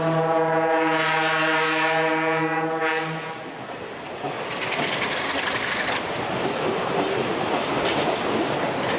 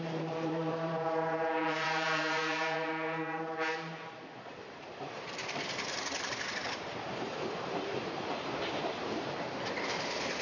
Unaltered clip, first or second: first